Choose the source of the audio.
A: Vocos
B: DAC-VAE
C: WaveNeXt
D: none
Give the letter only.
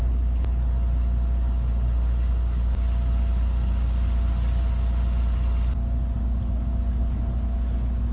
D